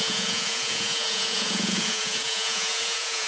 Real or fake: fake